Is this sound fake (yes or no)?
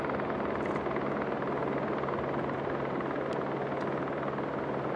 no